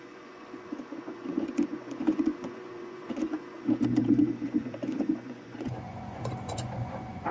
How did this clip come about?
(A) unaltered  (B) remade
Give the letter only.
B